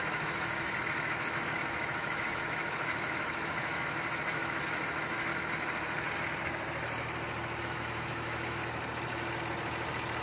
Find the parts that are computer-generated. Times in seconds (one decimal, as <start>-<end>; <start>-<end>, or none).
0.0-5.3; 7.6-8.6